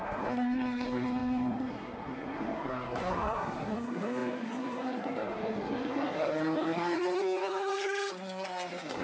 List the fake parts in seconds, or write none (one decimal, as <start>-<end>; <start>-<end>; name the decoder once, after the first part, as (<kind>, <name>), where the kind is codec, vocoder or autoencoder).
0.0-9.0 (codec, SNAC)